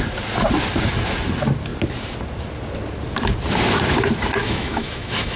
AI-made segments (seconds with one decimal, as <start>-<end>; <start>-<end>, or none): 4.4-5.4